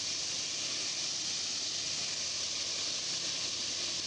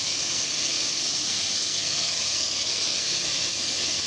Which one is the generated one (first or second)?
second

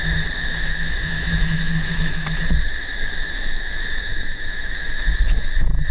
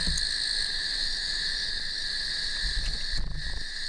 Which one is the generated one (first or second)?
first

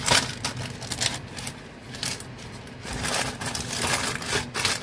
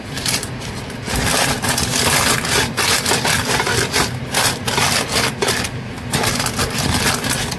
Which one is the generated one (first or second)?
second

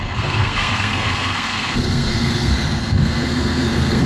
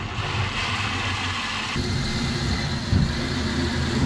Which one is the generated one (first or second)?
first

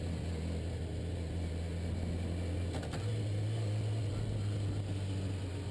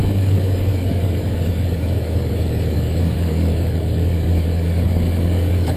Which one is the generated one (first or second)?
second